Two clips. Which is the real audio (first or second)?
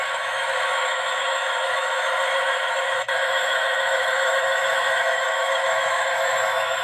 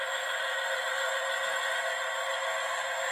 second